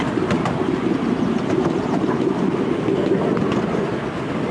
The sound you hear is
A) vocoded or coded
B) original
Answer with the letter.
B